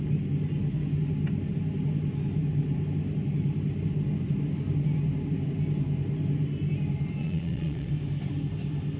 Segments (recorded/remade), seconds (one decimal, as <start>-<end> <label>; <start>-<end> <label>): 0.0-7.2 recorded; 7.2-7.9 remade; 7.9-9.0 recorded